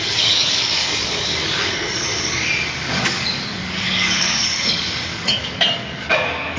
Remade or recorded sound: remade